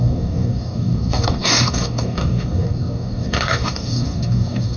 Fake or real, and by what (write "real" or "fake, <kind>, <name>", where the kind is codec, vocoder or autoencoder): fake, codec, DAC